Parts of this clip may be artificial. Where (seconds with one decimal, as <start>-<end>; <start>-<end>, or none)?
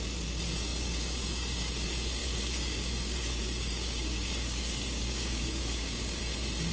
0.7-1.7; 2.2-6.2